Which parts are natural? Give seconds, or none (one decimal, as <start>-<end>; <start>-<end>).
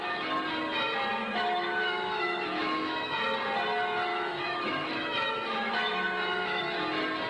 0.0-1.2; 3.2-4.1; 6.6-7.3